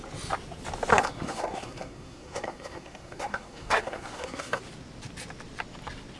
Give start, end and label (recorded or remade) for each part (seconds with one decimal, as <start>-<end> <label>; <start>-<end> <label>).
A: 0.0-0.9 recorded; 0.9-4.6 remade; 4.6-6.2 recorded